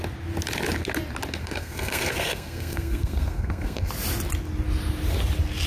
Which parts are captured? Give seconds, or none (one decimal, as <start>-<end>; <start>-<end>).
0.0-1.4; 3.9-5.7